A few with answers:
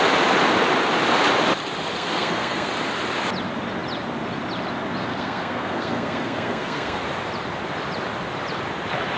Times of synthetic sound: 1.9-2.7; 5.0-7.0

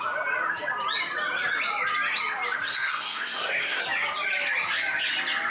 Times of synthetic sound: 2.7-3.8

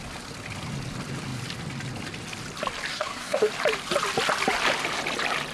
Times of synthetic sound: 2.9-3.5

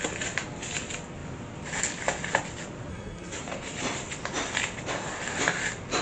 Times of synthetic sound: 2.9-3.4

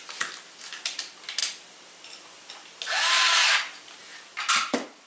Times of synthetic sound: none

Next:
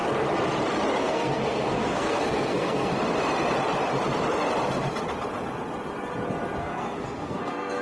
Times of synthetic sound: 1.0-2.9; 6.6-7.8